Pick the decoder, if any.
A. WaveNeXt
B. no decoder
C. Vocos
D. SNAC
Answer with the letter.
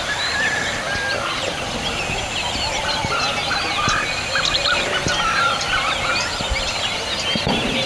B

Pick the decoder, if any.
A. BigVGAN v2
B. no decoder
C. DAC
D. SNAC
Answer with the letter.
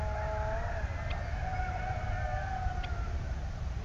B